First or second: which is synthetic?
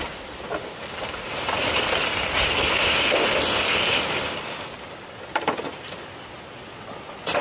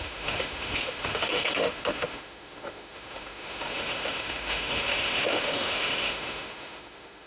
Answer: second